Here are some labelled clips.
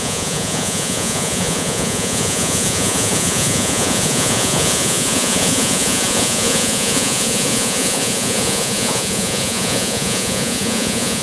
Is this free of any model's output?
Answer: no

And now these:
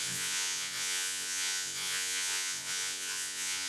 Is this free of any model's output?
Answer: no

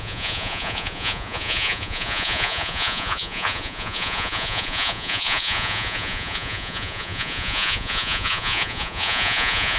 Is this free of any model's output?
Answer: no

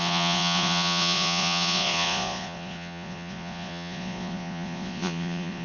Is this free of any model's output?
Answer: no